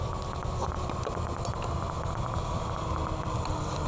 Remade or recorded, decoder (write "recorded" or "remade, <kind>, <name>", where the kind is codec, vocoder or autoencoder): recorded